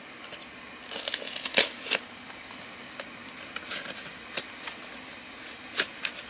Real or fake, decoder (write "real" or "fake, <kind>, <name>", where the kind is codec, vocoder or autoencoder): real